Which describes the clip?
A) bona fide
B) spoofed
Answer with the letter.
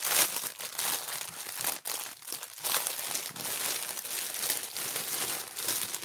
A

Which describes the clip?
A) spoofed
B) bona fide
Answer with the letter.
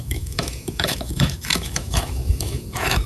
A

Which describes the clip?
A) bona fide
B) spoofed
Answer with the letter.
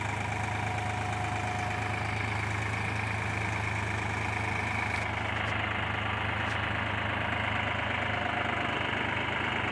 A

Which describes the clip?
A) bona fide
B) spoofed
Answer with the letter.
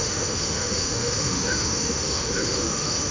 B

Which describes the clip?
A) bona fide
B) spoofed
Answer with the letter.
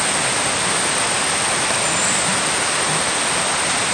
A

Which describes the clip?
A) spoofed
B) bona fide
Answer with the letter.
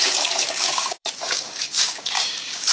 A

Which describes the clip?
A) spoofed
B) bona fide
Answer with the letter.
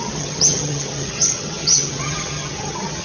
A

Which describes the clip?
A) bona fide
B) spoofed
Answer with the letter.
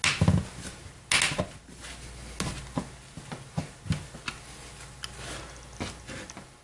A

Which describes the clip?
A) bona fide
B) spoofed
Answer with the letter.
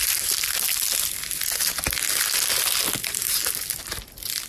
A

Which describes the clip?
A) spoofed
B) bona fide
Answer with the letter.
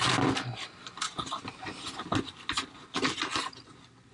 B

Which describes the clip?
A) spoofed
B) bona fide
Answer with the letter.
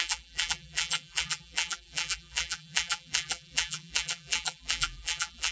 A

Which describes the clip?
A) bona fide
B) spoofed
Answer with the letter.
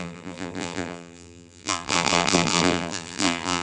B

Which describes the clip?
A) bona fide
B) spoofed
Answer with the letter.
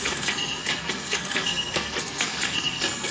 B